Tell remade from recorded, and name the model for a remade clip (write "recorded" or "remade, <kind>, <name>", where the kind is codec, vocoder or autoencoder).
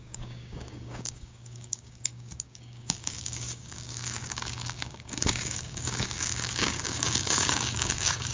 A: remade, codec, DAC